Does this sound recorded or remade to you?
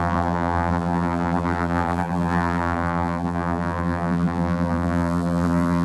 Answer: remade